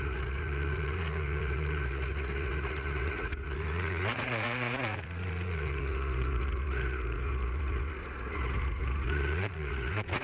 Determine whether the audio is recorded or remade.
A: remade